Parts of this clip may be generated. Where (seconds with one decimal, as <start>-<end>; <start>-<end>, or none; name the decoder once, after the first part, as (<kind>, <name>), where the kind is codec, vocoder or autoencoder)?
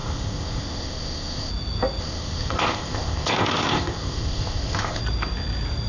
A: 0.0-1.5 (codec, ZipCodec); 2.0-5.0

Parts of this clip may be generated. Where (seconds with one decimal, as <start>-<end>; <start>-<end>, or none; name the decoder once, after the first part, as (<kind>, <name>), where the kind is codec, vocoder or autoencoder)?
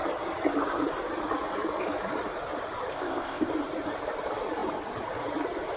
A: 2.9-3.5 (codec, ZipCodec)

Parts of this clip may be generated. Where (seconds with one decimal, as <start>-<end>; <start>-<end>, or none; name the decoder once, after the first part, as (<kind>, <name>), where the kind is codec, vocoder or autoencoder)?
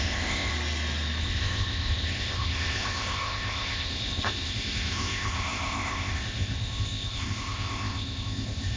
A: 0.0-0.5 (codec, ZipCodec); 1.2-8.8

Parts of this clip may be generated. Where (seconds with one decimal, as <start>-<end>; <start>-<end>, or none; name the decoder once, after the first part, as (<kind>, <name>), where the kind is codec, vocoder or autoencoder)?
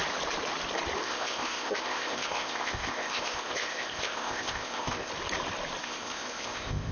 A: 1.0-5.1 (codec, ZipCodec); 5.8-6.9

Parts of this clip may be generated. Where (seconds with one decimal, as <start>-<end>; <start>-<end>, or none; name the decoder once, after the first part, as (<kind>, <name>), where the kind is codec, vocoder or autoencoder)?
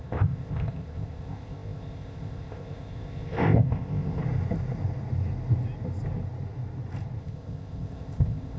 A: 0.0-4.2 (codec, ZipCodec); 7.2-8.6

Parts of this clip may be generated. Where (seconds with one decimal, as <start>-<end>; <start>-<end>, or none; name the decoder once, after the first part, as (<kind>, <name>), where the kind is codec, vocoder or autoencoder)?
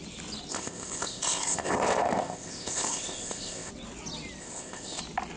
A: 0.5-3.7 (codec, ZipCodec); 4.4-5.0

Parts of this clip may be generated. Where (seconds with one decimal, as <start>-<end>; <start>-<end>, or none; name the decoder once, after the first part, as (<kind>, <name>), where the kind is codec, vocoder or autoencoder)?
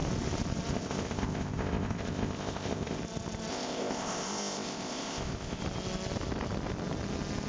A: 0.7-3.0 (codec, ZipCodec); 3.5-5.6